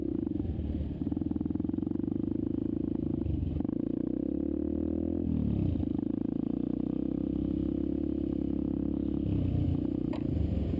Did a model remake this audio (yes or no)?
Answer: no